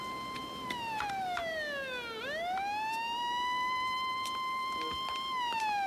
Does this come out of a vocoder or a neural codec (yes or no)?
no